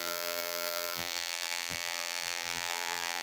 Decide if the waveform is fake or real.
fake